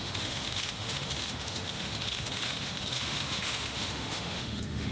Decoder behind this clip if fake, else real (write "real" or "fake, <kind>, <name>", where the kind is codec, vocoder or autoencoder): fake, autoencoder, DAC-VAE